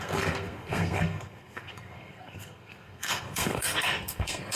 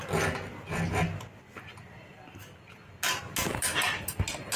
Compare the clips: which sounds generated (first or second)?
first